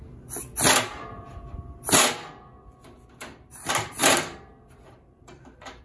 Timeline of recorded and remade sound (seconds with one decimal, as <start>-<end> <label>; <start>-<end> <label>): 0.0-4.0 recorded; 4.0-5.8 remade